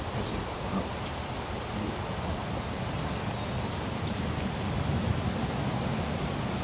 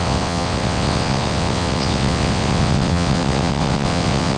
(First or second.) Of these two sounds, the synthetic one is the second